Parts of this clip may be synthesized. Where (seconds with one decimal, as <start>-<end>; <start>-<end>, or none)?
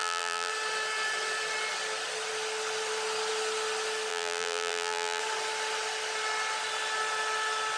0.0-0.5; 4.1-5.2